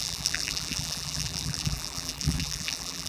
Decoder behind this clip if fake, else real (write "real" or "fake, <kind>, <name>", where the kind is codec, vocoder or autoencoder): fake, vocoder, BigVGAN v2